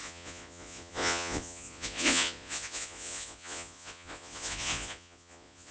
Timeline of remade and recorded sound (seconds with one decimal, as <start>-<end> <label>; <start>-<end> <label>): 0.0-5.7 remade